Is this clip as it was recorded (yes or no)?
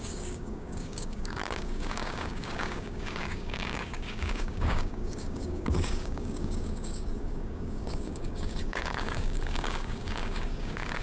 no